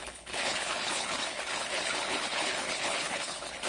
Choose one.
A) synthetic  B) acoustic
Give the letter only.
A